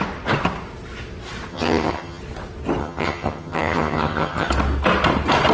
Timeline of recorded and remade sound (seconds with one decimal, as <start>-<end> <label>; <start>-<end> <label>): 0.0-1.5 recorded; 1.5-2.2 remade; 2.2-2.8 recorded; 2.8-4.5 remade; 4.5-5.5 recorded